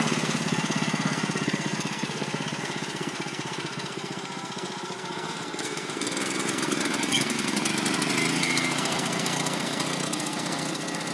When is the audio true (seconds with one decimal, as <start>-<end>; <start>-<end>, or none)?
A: 7.7-8.3